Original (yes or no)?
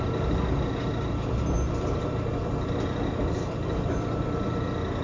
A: yes